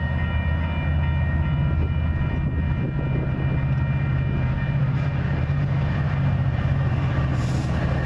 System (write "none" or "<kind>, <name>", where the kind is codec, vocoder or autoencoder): none